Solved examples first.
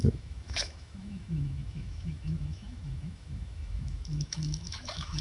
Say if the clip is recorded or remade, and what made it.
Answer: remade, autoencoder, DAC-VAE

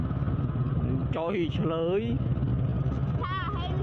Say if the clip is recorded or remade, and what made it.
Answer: recorded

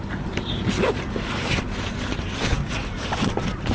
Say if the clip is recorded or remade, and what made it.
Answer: recorded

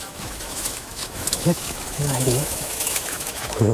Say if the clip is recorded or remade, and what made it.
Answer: remade, autoencoder, DAC-VAE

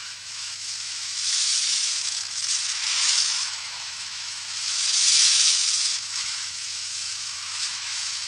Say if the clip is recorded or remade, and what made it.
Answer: remade, autoencoder, DAC-VAE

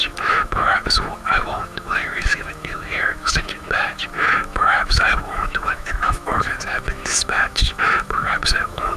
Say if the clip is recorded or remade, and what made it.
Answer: remade, autoencoder, DAC-VAE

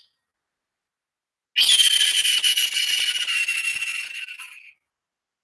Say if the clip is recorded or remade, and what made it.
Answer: recorded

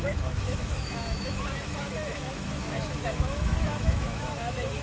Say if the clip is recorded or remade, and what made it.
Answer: remade, autoencoder, DAC-VAE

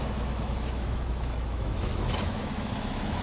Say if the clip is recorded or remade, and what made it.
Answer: remade, autoencoder, DAC-VAE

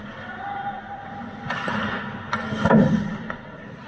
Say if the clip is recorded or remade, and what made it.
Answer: recorded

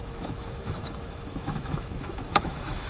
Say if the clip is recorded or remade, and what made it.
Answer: remade, autoencoder, DAC-VAE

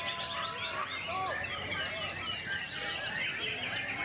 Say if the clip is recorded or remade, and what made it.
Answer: recorded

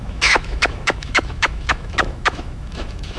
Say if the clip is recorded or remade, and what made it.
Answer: remade, autoencoder, DAC-VAE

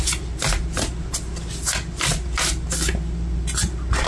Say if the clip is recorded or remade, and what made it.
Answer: recorded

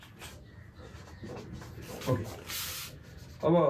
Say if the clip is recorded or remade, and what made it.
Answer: recorded